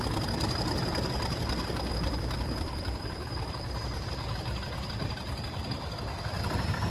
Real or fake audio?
fake